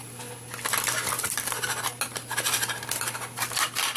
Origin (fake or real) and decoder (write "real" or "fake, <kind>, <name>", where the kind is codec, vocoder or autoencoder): fake, vocoder, BigVGAN v2